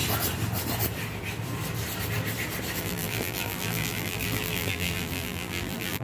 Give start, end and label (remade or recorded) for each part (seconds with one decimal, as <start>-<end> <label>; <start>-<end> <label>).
0.0-2.8 recorded; 2.8-6.0 remade

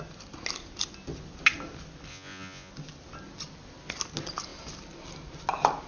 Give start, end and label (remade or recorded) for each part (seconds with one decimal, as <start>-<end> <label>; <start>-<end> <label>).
0.0-2.1 recorded; 2.1-2.7 remade; 2.7-5.9 recorded

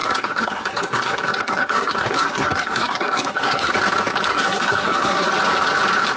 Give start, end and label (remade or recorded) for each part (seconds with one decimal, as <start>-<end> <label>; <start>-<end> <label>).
0.0-3.7 remade; 3.7-4.3 recorded; 4.3-5.3 remade; 5.3-6.2 recorded

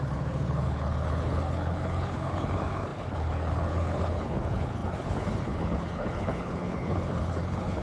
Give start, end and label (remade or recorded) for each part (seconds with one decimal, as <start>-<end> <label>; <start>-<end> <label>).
0.0-7.8 remade

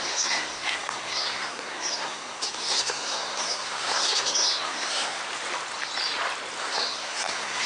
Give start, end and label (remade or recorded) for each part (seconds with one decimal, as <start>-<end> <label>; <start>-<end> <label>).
0.0-5.2 remade; 5.2-6.6 recorded; 6.6-7.7 remade